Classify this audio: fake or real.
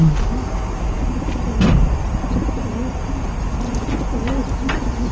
real